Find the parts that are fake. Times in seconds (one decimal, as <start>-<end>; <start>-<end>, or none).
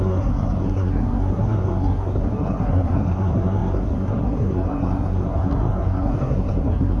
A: 0.0-7.0